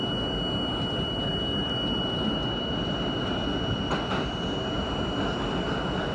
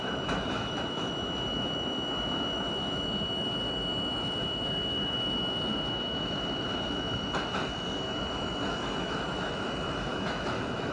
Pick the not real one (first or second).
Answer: second